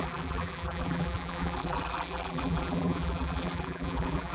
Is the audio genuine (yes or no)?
no